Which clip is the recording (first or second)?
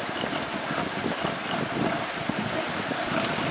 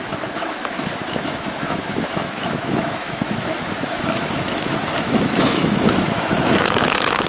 first